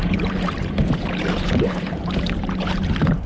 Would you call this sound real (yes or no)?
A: no